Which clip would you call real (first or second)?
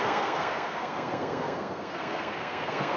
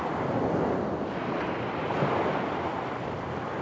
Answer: second